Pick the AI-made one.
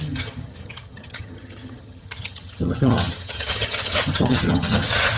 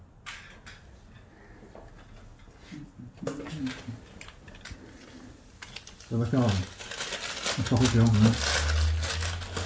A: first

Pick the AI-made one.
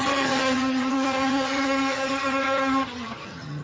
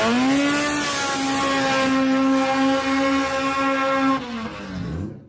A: first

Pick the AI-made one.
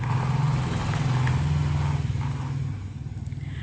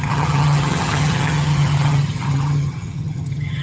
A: second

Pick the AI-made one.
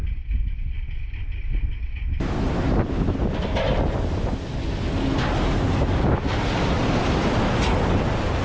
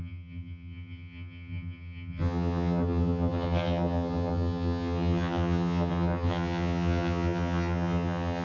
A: second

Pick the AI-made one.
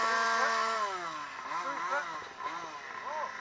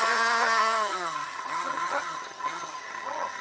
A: second